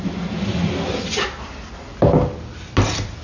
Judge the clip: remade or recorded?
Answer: recorded